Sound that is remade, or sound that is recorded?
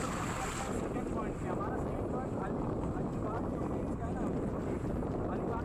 recorded